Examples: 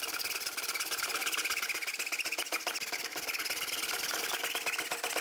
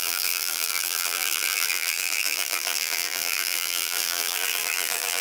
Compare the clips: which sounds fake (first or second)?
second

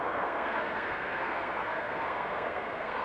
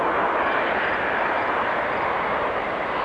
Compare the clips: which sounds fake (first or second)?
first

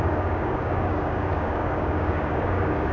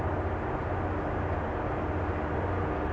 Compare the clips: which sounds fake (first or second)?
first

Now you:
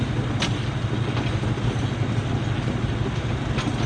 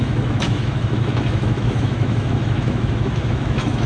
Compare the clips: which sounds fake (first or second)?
second